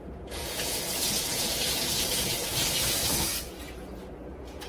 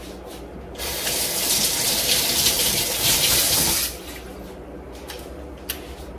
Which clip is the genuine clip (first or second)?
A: second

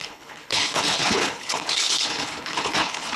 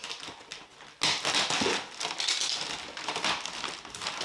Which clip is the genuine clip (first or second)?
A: second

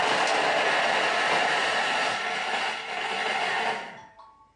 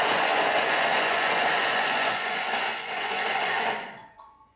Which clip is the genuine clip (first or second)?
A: first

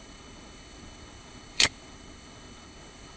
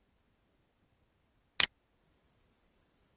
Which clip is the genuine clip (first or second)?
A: second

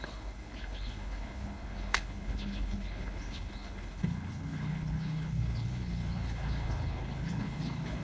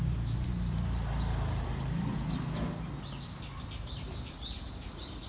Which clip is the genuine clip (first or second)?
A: second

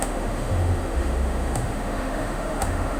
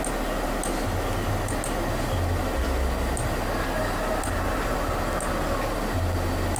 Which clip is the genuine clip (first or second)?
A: second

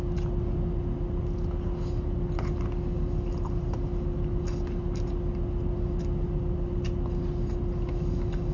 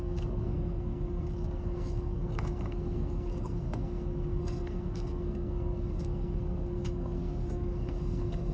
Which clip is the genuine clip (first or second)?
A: first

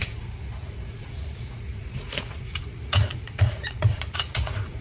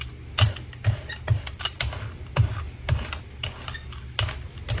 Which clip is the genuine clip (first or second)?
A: second